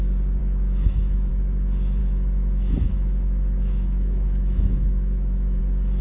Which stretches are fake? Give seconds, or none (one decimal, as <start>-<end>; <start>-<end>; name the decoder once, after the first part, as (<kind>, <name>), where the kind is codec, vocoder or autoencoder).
0.4-1.3 (autoencoder, DAC-VAE); 2.0-5.6